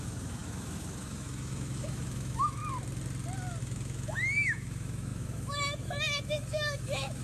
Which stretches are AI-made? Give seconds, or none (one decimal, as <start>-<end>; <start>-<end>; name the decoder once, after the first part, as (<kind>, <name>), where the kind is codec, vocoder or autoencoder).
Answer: 0.0-2.6 (autoencoder, DAC-VAE); 3.6-7.2